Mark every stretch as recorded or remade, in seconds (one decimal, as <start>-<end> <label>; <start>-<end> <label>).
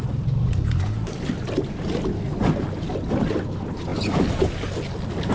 0.0-5.3 recorded